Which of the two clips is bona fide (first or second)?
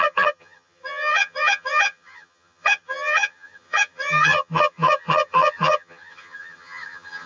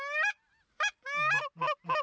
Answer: second